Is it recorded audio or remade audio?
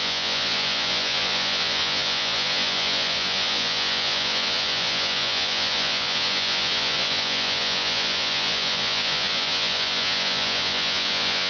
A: remade